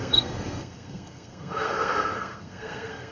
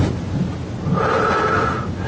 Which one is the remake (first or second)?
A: first